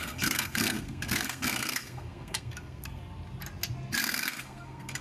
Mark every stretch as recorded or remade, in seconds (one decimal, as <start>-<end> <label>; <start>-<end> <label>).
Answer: 0.0-3.0 remade; 3.0-4.0 recorded; 4.0-5.0 remade